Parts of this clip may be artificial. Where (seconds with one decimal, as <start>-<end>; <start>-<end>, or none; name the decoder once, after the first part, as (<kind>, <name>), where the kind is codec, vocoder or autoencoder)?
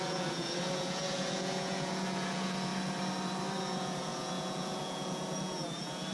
0.0-2.7 (vocoder, Vocos); 3.6-6.1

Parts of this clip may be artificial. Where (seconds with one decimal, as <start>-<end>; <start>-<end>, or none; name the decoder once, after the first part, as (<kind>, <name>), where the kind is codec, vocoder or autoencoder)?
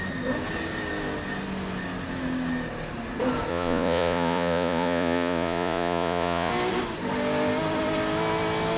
3.5-6.5 (vocoder, Vocos)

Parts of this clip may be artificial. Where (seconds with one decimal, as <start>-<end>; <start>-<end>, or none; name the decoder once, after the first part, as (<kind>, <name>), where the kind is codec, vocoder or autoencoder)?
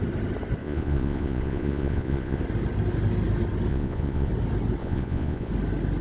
0.6-2.4 (vocoder, Vocos); 3.7-4.3; 4.8-5.5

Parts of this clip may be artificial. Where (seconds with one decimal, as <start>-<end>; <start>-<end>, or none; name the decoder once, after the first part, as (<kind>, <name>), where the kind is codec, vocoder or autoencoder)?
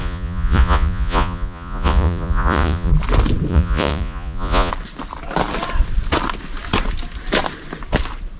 0.0-2.9 (vocoder, Vocos); 3.5-4.7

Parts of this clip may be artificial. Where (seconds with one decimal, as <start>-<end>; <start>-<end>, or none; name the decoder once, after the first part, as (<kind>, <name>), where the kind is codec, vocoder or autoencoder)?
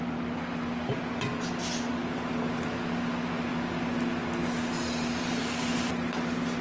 none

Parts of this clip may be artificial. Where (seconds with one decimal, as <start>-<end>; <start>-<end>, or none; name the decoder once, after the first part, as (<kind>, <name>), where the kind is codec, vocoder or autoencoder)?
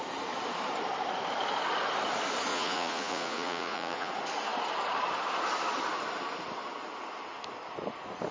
2.5-4.1 (vocoder, Vocos)